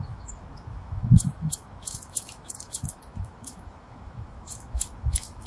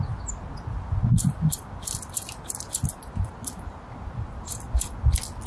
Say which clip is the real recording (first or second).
second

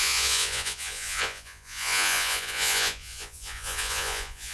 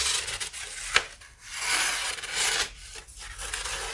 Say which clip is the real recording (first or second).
second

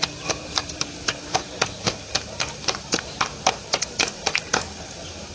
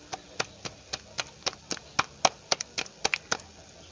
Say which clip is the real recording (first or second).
second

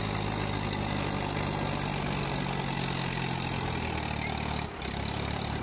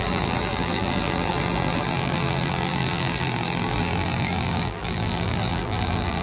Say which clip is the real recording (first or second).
first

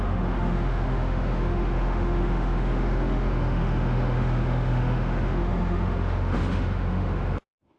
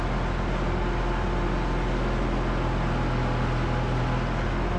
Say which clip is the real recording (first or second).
second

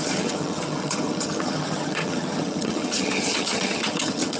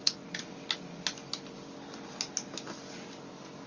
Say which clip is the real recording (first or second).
second